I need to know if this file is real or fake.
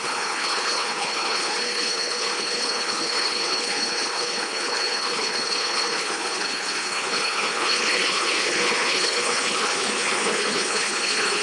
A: fake